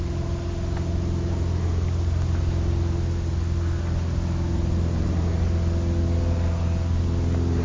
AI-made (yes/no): no